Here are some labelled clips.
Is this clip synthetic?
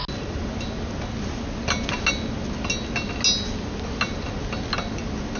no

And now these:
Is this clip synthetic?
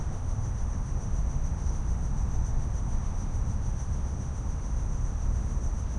yes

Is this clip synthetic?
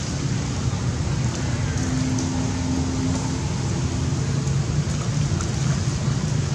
no